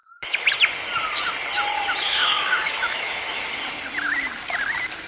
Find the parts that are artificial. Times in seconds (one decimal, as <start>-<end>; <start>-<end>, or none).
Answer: 0.0-0.5; 2.2-3.4